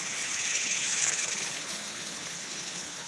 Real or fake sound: fake